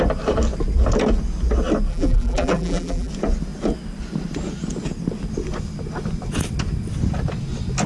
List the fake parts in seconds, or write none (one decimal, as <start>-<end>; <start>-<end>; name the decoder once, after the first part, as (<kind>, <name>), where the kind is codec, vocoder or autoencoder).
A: 1.9-3.1 (vocoder, BigVGAN v2)